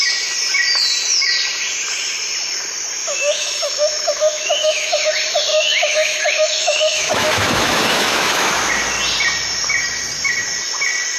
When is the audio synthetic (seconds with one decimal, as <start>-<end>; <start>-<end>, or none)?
3.0-5.1; 5.5-8.7